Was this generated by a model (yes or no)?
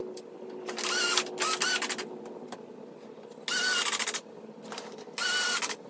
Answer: no